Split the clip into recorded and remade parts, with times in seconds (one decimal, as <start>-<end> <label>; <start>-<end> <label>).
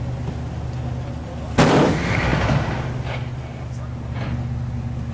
0.0-5.1 recorded